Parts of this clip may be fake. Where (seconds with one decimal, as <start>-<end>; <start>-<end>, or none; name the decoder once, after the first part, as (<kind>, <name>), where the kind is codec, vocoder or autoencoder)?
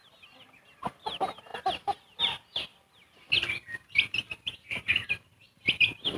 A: 0.0-2.7 (vocoder, BigVGAN v2); 4.9-6.2